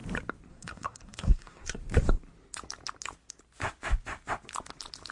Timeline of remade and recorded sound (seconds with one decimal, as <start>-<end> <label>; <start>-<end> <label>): 0.0-0.5 recorded; 0.5-1.8 remade; 1.8-5.1 recorded